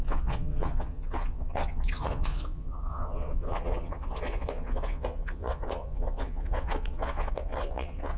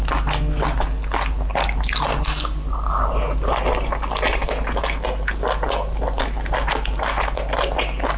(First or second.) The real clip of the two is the second